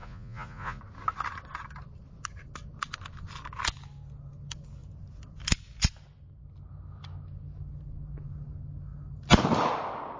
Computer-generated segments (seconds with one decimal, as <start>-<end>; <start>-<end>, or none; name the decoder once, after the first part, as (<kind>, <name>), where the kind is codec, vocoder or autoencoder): 0.0-0.8 (vocoder, Vocos)